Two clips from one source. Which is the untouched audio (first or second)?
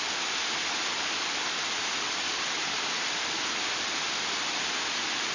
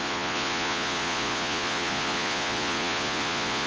first